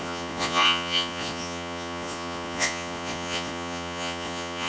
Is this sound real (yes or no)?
no